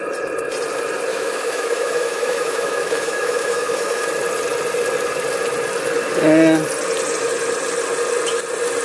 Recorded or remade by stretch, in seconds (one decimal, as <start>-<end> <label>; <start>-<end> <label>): 0.0-1.1 recorded; 1.1-4.1 remade; 4.1-8.8 recorded